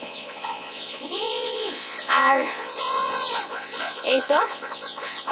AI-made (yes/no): yes